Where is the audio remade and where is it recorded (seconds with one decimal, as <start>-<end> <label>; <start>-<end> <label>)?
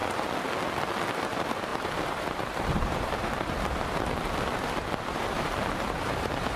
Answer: 0.0-1.1 recorded; 1.1-6.6 remade